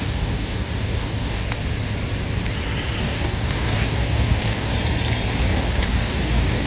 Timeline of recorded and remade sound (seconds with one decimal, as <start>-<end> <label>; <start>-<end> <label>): 0.0-1.4 remade; 1.4-3.0 recorded; 3.0-4.7 remade; 4.7-5.4 recorded; 5.4-6.7 remade